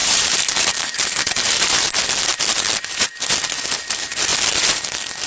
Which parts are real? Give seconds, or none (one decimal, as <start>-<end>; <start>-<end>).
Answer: 1.9-2.3; 3.1-4.3